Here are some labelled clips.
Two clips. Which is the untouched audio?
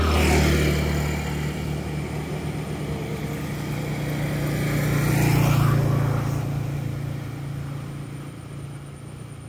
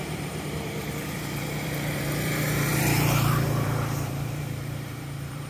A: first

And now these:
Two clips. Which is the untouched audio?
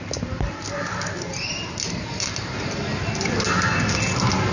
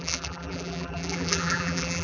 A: first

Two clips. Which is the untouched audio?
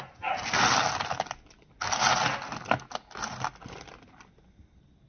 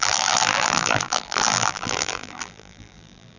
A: first